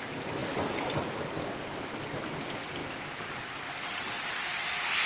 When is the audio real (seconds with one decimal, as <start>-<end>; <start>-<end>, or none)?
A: 0.0-5.1